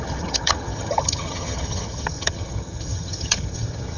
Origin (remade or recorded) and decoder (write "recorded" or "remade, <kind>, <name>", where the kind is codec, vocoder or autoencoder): remade, vocoder, HiFi-GAN